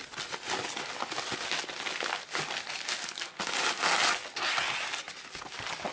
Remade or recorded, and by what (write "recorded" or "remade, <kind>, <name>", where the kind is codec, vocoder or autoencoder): recorded